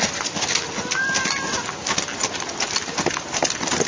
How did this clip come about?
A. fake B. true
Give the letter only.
B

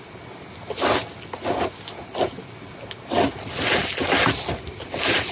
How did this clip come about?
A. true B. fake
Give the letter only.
A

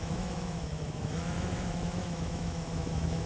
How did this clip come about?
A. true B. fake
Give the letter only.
B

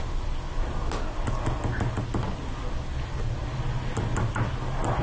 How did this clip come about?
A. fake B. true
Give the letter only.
B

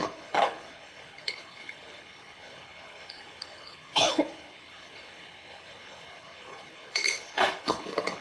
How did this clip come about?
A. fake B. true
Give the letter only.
A